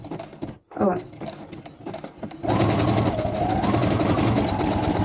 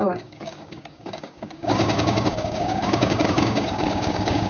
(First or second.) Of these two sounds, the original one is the first